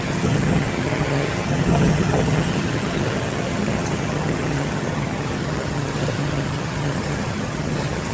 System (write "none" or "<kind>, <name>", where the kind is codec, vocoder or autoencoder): vocoder, HiFi-GAN